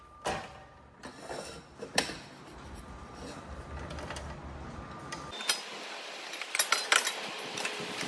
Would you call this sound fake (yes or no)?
no